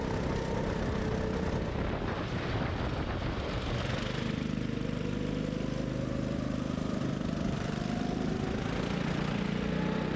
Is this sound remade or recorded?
recorded